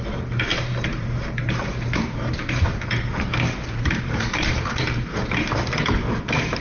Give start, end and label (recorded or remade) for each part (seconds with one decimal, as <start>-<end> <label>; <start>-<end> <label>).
0.0-6.6 remade